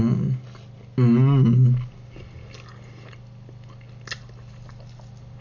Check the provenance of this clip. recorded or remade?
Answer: recorded